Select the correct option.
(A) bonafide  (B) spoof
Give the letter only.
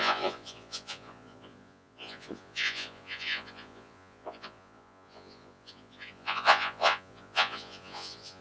B